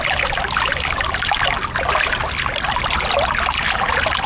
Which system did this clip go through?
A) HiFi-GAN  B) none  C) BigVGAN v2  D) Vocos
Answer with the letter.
B